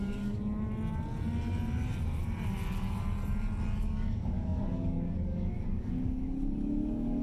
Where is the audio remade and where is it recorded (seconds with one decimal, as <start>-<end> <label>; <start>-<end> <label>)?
0.0-0.4 remade; 0.4-3.8 recorded; 3.8-7.2 remade